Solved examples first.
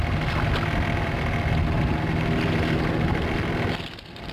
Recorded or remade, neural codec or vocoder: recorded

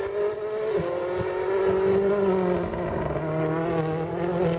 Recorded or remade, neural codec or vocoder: recorded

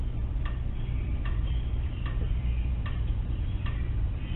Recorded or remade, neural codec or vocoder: remade, vocoder, BigVGAN v2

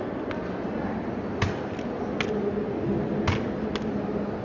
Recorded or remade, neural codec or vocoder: recorded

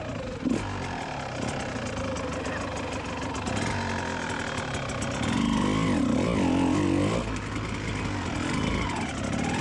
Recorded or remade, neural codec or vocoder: recorded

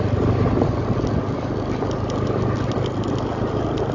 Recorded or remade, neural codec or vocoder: recorded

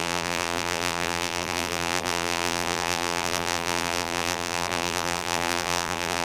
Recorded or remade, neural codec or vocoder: remade, vocoder, BigVGAN v2